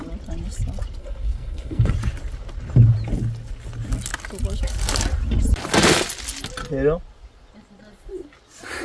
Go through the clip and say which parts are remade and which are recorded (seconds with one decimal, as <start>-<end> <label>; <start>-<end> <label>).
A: 0.0-1.0 recorded; 1.0-1.9 remade; 1.9-8.8 recorded